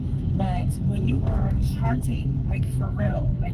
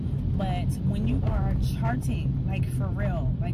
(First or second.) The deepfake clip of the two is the first